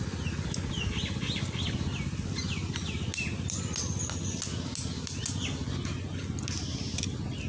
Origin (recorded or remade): recorded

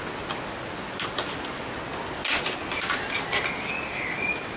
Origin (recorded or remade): recorded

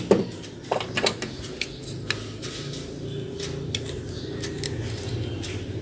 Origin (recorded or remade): recorded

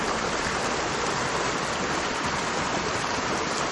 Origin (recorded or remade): recorded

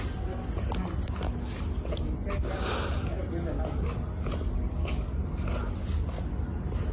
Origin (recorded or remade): recorded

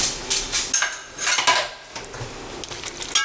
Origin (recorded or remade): recorded